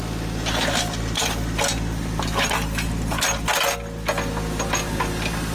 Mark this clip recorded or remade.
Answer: recorded